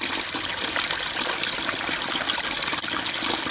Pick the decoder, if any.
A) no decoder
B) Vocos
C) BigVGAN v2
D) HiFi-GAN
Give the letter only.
A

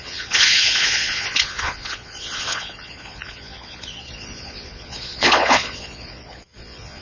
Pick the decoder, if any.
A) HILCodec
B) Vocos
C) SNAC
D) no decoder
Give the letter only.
B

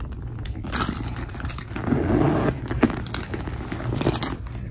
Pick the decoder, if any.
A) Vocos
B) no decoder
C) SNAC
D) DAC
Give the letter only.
B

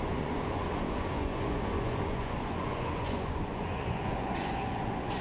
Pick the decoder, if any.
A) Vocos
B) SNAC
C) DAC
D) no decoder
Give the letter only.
A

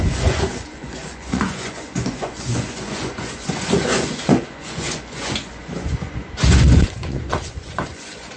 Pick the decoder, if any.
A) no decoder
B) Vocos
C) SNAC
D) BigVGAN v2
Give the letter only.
B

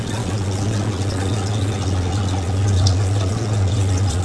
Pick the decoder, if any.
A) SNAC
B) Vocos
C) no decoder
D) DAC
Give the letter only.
B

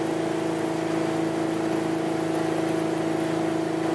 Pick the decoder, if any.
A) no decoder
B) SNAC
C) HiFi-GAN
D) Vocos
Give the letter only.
A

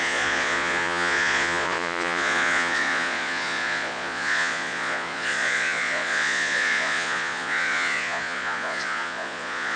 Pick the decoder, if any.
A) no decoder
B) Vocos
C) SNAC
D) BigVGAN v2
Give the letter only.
B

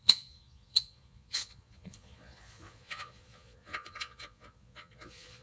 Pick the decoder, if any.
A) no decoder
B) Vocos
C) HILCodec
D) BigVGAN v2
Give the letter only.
B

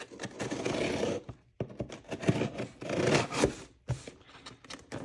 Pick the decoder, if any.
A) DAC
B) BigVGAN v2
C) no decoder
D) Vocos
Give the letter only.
C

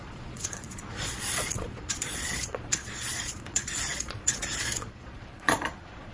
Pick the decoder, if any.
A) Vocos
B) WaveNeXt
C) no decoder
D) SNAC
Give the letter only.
A